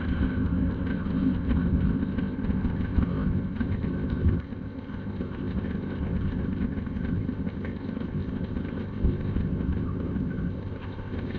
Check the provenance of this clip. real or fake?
fake